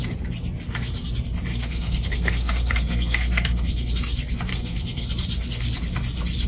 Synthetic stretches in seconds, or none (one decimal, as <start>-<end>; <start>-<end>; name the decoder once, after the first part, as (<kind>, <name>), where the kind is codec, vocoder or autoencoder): 1.5-3.9 (codec, SNAC); 4.5-5.1